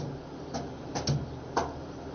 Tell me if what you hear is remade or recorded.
recorded